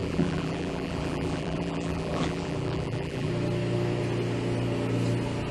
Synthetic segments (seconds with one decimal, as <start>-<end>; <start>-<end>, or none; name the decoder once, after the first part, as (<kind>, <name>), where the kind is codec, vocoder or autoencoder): 0.0-3.3 (vocoder, BigVGAN v2)